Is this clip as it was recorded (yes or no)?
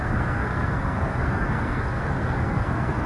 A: no